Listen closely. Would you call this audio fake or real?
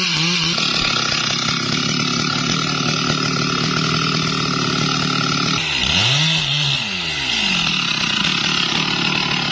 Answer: real